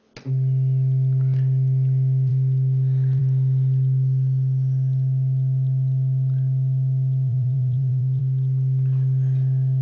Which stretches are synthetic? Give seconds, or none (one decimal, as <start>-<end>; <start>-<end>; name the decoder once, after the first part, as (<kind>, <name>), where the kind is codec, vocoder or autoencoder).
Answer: 7.3-8.2 (vocoder, BigVGAN v2)